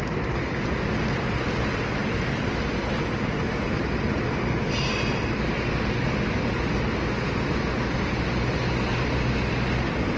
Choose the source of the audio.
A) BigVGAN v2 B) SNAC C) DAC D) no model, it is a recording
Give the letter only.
D